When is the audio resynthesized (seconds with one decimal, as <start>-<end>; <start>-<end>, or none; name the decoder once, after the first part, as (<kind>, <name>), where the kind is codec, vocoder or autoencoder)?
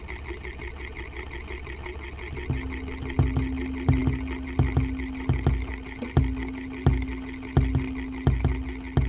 none